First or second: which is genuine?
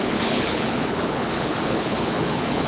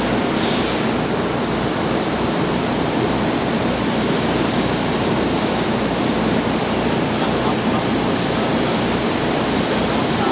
second